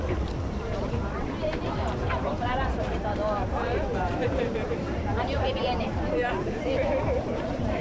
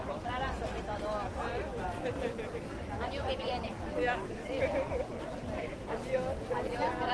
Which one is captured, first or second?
second